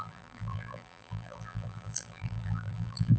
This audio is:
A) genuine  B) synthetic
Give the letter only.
B